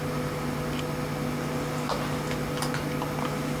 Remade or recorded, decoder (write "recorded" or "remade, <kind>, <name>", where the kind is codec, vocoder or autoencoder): recorded